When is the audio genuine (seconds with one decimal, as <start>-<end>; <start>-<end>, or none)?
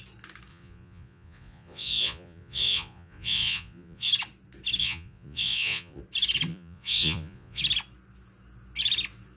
0.0-0.5; 4.1-4.8; 6.0-6.5; 7.6-9.4